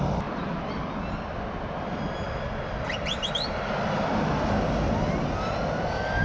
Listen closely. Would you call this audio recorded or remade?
recorded